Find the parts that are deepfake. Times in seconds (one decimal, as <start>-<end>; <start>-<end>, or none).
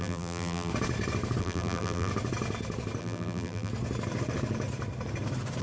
0.0-0.7; 1.4-2.1; 3.0-3.7